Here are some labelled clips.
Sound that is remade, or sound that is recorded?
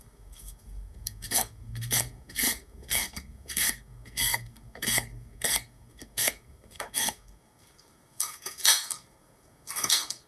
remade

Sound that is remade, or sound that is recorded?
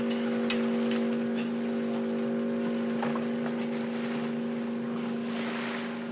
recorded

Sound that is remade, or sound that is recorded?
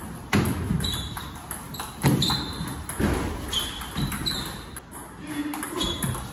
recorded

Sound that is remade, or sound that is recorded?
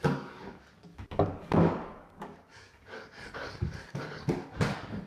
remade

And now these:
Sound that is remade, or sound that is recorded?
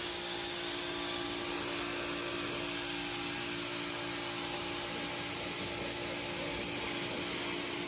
recorded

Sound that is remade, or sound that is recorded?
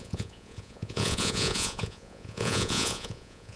remade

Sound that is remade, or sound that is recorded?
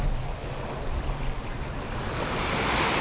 recorded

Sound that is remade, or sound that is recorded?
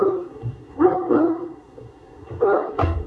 remade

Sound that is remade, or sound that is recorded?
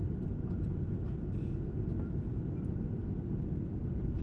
recorded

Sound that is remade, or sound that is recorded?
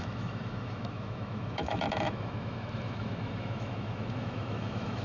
remade